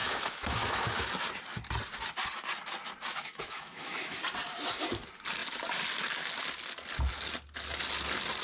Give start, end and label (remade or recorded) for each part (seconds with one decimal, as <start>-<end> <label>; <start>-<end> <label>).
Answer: 0.0-1.1 remade; 1.1-3.1 recorded; 3.1-4.2 remade; 4.2-8.4 recorded